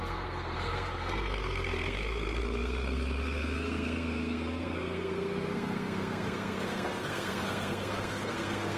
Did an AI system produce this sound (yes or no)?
yes